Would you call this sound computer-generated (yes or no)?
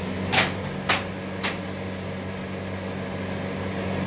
no